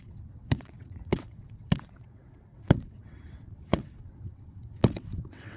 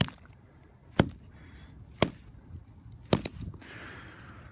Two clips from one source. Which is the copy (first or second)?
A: first